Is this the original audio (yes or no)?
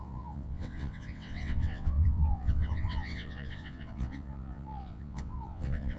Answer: no